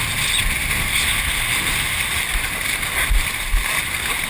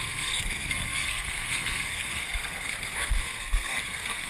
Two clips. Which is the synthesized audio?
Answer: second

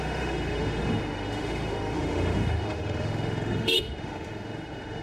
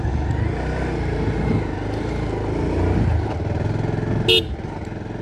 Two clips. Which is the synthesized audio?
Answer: first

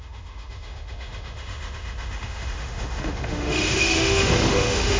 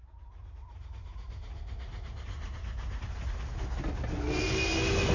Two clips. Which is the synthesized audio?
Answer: first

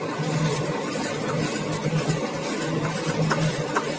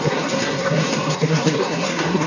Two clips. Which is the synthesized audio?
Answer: second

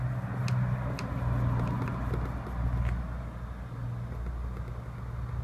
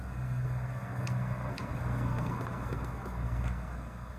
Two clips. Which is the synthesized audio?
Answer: second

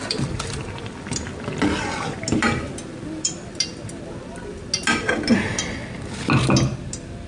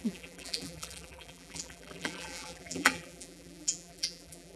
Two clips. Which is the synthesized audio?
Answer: second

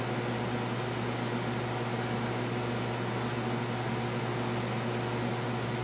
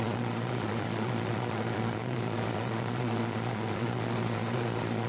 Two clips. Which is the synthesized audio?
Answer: second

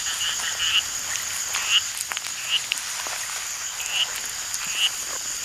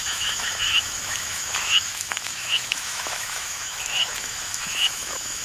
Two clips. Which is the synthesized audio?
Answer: second